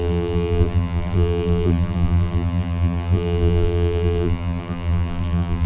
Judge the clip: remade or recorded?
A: remade